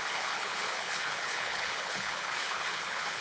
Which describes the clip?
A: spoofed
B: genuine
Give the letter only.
A